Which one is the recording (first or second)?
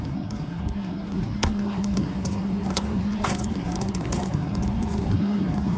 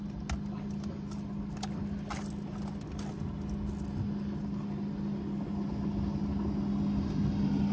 second